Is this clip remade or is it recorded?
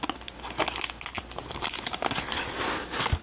recorded